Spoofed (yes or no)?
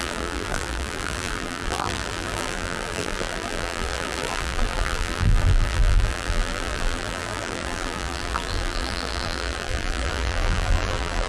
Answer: yes